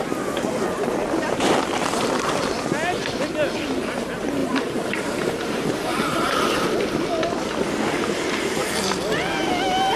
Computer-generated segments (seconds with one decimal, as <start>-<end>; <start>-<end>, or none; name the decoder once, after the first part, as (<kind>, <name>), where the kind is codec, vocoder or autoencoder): 1.0-2.0 (vocoder, BigVGAN v2); 4.4-6.4